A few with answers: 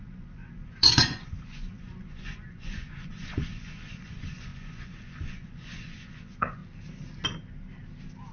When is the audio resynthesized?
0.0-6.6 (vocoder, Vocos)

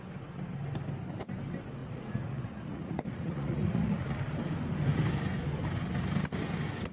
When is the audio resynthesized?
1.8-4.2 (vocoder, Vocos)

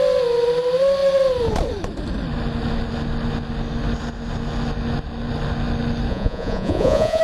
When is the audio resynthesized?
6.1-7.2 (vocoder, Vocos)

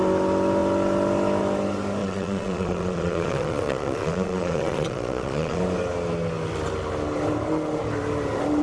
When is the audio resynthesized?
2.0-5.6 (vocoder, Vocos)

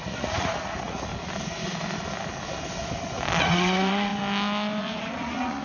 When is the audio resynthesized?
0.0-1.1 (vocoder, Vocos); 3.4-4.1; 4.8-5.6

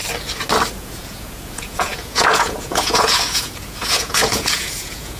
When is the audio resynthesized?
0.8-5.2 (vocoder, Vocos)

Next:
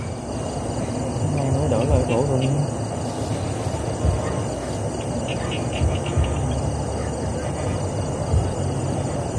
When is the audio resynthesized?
none